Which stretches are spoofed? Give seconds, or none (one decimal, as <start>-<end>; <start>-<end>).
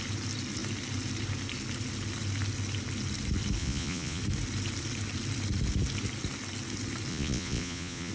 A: 3.6-4.2; 7.1-8.1